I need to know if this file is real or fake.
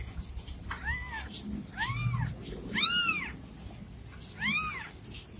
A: real